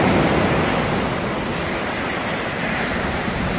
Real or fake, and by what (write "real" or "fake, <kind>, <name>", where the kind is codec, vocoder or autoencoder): real